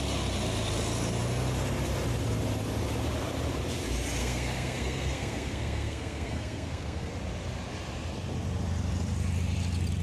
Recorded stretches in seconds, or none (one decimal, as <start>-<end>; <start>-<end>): 0.0-4.2; 7.1-10.0